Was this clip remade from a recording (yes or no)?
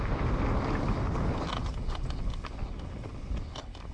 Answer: no